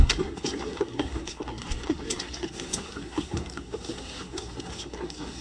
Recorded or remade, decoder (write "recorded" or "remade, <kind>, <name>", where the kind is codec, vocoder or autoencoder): remade, codec, SNAC